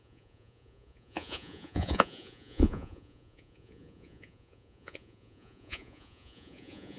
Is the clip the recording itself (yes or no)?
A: no